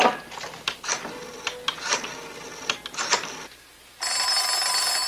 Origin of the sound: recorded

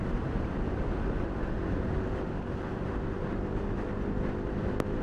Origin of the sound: recorded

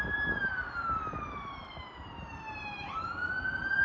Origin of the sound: recorded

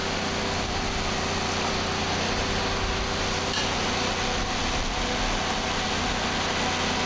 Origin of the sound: recorded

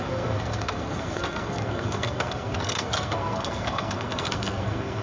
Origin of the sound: remade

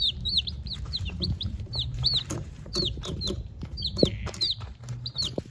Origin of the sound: remade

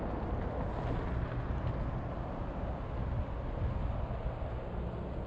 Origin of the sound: recorded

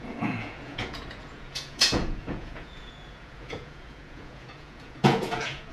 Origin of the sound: remade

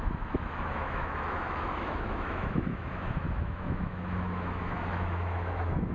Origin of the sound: remade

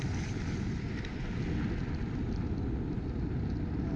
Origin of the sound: recorded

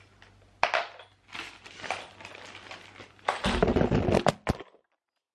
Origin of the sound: recorded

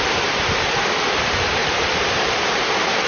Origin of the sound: remade